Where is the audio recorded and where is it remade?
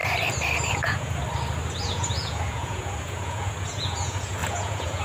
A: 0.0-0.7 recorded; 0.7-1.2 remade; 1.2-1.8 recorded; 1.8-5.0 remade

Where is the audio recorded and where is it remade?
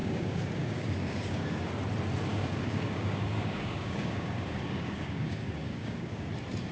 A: 0.0-1.7 remade; 1.7-2.3 recorded; 2.3-6.3 remade; 6.3-6.7 recorded